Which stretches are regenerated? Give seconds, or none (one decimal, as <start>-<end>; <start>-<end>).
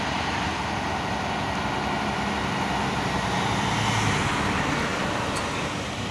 none